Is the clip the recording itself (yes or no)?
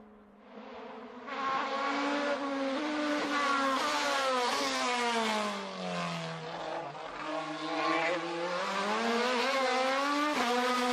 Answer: yes